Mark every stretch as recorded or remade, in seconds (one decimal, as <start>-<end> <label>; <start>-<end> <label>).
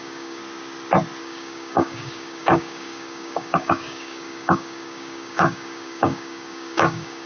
0.0-0.4 remade; 0.4-1.2 recorded; 1.2-7.3 remade